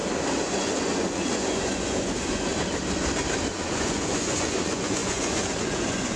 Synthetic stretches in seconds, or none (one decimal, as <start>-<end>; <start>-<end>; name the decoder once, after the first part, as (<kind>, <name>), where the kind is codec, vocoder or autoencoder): 0.5-2.5 (vocoder, Vocos); 3.5-6.2

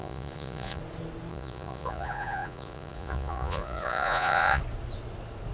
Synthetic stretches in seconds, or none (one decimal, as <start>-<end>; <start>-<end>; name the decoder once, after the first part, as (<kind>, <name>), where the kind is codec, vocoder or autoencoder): 0.0-0.8 (vocoder, Vocos); 1.3-4.6

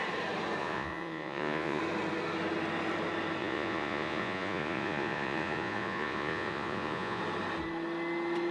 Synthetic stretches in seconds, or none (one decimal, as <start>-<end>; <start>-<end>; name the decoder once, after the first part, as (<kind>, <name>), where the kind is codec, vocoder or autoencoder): 0.6-1.8 (vocoder, Vocos); 3.4-7.2

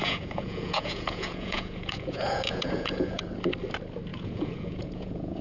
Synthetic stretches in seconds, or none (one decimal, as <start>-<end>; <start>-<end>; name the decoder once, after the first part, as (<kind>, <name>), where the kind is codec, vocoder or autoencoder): 0.0-3.2 (vocoder, Vocos); 4.1-5.4